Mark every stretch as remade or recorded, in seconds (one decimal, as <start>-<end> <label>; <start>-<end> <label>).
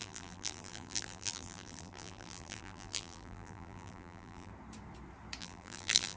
0.0-4.5 remade; 4.5-5.4 recorded; 5.4-6.2 remade